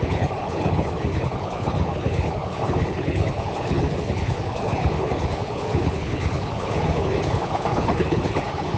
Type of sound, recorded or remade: remade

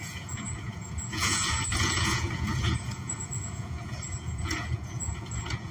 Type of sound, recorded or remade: remade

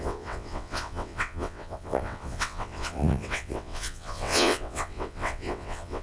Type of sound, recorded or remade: remade